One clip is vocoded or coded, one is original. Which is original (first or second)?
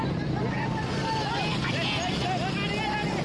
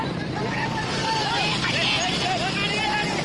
first